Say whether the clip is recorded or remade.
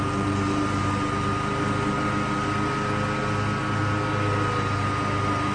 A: recorded